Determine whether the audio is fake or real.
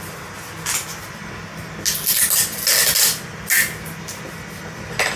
real